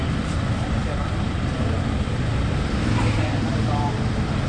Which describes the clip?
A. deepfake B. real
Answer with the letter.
B